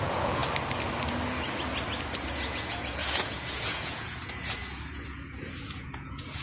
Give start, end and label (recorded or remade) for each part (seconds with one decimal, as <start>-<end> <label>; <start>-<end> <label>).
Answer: 0.0-0.4 remade; 0.4-2.3 recorded; 2.3-6.4 remade